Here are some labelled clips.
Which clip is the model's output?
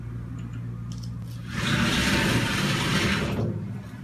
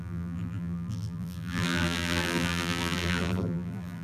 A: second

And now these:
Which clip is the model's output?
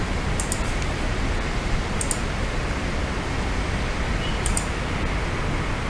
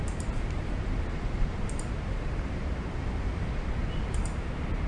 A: second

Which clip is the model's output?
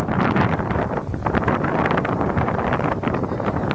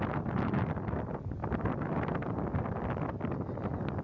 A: first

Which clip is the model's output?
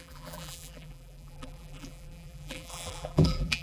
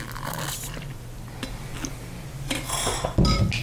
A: first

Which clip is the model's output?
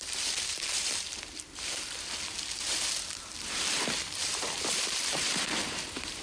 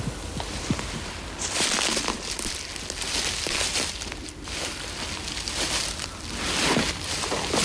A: first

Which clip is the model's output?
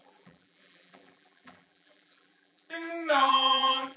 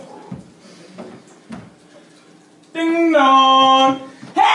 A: first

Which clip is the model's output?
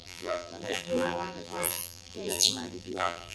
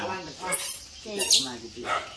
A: first